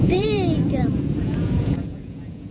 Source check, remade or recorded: remade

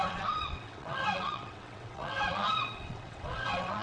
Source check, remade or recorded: remade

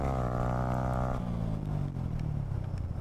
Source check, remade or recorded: recorded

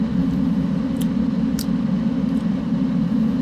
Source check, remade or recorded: recorded